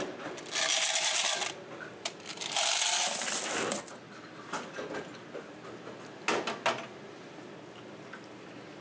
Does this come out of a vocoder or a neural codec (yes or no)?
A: no